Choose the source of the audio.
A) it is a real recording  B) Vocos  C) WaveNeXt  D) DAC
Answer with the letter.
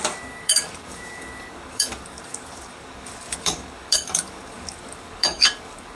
D